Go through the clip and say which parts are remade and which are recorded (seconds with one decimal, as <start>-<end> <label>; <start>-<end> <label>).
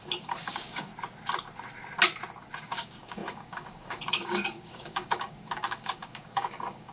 0.0-0.9 remade; 0.9-2.6 recorded; 2.6-6.9 remade